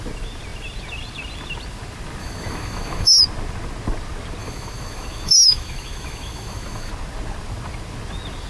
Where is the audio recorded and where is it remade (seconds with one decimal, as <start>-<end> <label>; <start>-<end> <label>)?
0.0-2.2 recorded; 2.2-3.2 remade; 3.2-4.4 recorded; 4.4-6.9 remade; 6.9-8.5 recorded